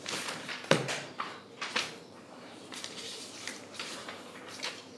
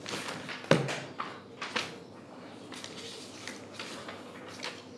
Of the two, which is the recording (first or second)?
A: second